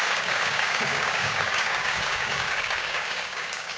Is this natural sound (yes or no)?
no